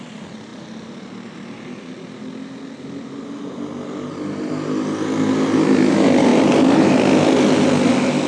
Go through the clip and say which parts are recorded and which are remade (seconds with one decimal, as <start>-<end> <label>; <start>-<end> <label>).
0.0-8.3 recorded